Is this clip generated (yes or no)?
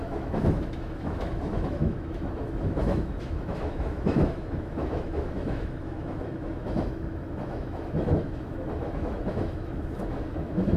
yes